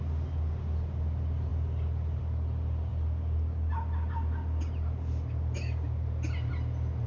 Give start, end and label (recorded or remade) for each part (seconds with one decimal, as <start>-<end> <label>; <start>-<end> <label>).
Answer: 0.0-7.1 recorded

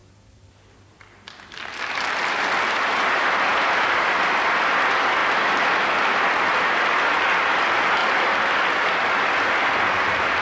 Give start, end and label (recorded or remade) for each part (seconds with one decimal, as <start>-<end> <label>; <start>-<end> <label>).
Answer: 0.0-10.4 recorded

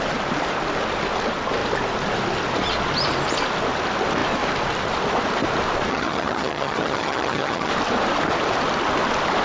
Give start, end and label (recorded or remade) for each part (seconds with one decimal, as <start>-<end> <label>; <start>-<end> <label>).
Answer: 0.0-5.9 recorded; 5.9-7.7 remade; 7.7-9.4 recorded

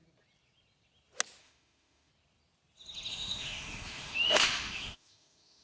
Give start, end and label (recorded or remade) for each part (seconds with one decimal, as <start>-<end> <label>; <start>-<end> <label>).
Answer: 0.0-1.4 recorded; 1.4-2.1 remade; 2.1-3.1 recorded; 3.1-5.6 remade

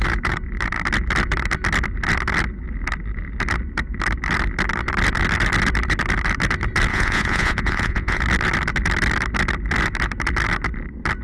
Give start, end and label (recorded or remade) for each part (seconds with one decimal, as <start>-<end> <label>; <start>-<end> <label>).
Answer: 0.0-6.9 recorded; 6.9-8.2 remade; 8.2-11.2 recorded